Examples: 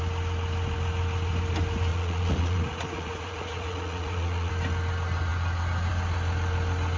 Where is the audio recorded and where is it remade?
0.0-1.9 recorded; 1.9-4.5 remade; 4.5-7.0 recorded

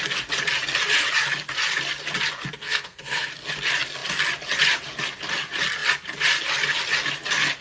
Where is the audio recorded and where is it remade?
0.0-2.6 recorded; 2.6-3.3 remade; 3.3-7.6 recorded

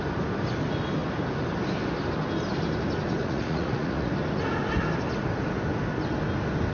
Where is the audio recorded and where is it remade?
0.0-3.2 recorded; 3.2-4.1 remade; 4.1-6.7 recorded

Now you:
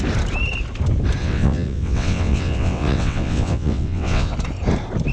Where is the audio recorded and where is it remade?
0.0-1.2 recorded; 1.2-4.3 remade; 4.3-5.1 recorded

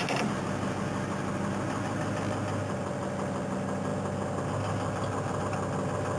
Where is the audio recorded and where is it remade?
0.0-6.2 recorded